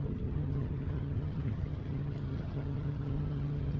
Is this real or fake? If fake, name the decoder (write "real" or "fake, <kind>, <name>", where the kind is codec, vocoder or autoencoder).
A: fake, vocoder, HiFi-GAN